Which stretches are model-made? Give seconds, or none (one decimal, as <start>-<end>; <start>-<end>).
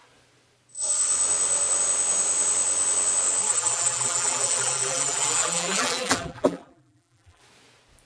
3.4-7.4